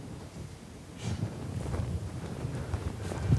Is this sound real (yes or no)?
no